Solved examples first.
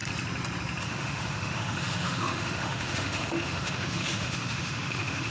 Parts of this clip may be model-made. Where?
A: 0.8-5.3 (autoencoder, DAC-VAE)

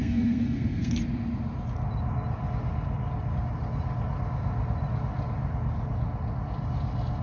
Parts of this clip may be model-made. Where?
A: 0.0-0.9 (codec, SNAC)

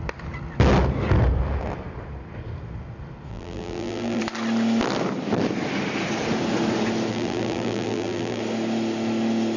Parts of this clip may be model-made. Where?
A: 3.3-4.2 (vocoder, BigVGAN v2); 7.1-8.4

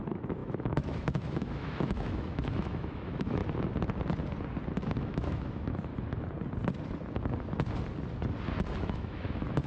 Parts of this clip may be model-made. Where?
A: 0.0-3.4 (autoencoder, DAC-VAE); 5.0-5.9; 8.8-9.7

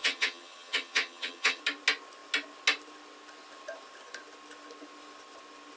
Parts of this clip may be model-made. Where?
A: 0.0-1.6 (vocoder, HiFi-GAN)